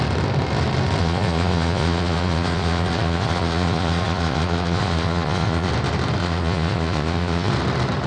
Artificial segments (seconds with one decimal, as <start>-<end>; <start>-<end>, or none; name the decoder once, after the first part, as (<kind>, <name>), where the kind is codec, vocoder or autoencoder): 1.0-5.7 (vocoder, Vocos); 6.2-7.5

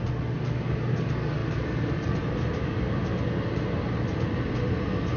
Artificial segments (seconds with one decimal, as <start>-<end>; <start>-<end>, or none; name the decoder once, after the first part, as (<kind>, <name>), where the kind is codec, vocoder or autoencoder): none

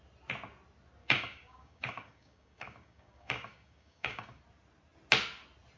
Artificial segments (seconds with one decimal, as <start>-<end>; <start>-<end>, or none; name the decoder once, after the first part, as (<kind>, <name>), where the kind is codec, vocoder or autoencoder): 1.0-4.4 (codec, DAC)

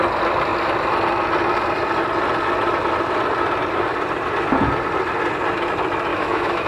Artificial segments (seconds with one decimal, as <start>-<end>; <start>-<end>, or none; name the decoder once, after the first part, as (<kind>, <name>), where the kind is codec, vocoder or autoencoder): 6.1-6.7 (autoencoder, DAC-VAE)

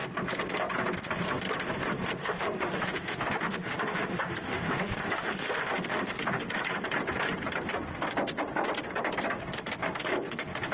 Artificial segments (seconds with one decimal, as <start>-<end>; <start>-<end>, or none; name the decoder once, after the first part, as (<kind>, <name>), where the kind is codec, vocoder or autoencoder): 2.2-6.1 (autoencoder, DAC-VAE)

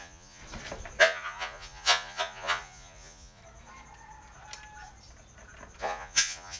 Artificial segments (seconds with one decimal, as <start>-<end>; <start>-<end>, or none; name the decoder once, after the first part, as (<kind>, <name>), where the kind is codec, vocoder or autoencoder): 0.0-0.4 (vocoder, Vocos); 1.0-3.4; 5.8-6.6